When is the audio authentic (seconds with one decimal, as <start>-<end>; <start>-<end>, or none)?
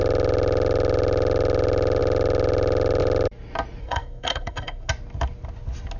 0.0-3.8; 4.9-6.0